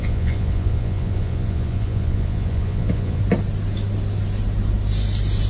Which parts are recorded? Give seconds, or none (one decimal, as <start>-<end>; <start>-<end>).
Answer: 3.2-5.5